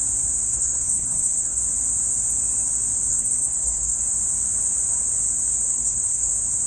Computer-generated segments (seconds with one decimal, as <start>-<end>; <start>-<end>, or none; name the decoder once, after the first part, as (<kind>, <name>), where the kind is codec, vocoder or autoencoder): 0.5-1.6 (codec, SNAC); 3.1-4.0; 5.7-6.3

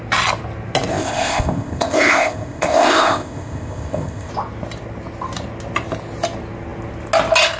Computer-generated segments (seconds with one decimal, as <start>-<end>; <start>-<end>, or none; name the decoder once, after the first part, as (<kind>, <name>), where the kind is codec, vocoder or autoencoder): 0.9-4.3 (codec, ZipCodec)

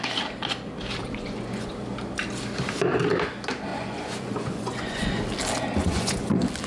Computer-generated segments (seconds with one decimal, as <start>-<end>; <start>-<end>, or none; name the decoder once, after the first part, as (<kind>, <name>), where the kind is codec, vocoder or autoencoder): 1.0-1.7 (vocoder, Vocos); 3.7-5.2; 5.8-6.3

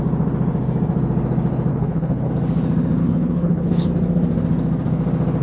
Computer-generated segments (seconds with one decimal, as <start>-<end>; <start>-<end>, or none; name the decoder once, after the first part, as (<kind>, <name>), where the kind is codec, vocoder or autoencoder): 1.7-2.3 (codec, HILCodec); 3.0-3.9

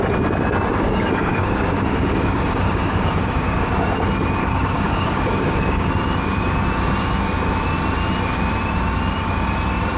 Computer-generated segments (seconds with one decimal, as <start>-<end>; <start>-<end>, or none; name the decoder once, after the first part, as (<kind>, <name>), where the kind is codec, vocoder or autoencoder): 0.7-3.7 (codec, DAC); 4.4-5.9

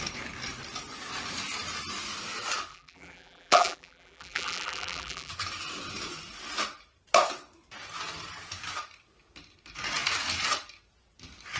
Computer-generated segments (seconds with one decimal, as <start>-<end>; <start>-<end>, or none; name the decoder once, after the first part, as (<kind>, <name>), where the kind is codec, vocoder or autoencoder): 2.7-5.3 (vocoder, BigVGAN v2)

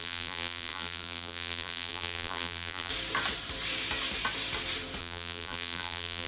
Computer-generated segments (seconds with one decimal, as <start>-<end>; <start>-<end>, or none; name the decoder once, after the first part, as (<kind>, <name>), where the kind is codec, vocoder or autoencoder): 0.0-2.9 (vocoder, BigVGAN v2); 5.0-6.3

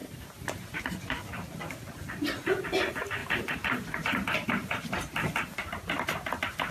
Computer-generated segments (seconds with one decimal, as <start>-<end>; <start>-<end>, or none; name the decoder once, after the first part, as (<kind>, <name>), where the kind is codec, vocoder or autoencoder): 0.0-0.8 (vocoder, BigVGAN v2); 3.2-5.3